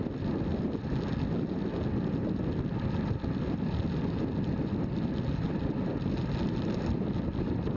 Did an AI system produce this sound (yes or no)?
no